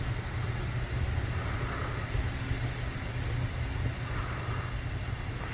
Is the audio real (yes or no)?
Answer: yes